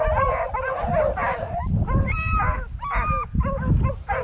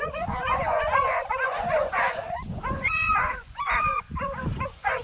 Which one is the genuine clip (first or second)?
first